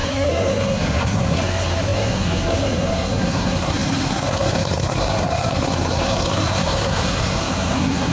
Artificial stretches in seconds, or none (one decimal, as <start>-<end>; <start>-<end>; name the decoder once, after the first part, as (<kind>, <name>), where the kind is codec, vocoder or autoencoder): 0.0-8.1 (codec, SNAC)